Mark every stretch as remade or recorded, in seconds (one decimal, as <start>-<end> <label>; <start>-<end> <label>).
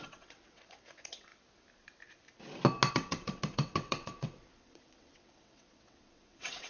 0.0-1.3 remade; 1.3-2.9 recorded; 2.9-6.7 remade